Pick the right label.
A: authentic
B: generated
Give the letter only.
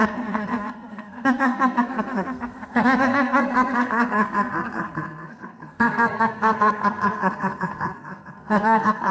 B